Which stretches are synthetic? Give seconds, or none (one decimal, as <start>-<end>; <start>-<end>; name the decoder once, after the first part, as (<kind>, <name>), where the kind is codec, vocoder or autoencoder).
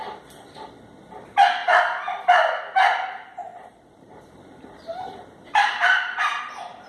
3.5-6.4 (vocoder, BigVGAN v2)